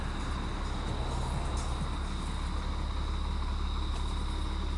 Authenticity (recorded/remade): recorded